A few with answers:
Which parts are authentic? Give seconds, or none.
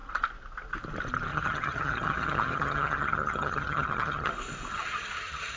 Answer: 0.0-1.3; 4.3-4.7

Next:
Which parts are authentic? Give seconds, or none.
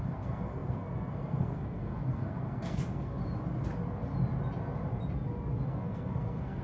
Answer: 3.2-5.7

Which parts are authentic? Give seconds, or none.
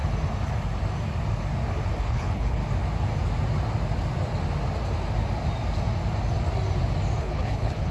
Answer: 0.0-2.0; 2.6-7.2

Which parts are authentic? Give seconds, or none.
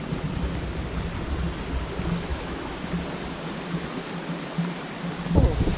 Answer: 0.0-2.3; 2.9-5.8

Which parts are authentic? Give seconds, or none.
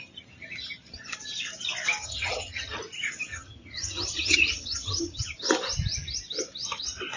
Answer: 0.0-2.0; 2.8-3.3; 5.2-7.2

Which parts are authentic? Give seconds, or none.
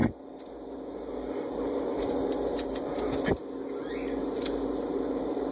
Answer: 3.4-4.2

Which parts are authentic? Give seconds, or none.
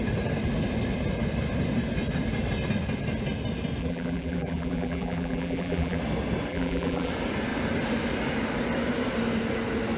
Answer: 0.0-3.8; 6.0-6.5; 7.1-10.0